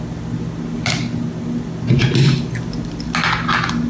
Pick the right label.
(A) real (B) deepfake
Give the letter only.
A